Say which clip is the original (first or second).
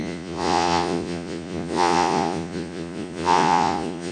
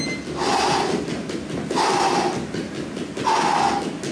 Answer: second